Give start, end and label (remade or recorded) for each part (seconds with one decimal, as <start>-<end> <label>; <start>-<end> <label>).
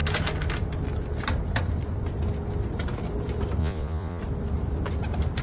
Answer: 0.0-3.6 recorded; 3.6-4.2 remade; 4.2-5.4 recorded